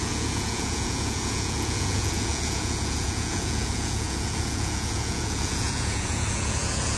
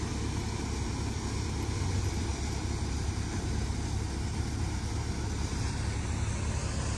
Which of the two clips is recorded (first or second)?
second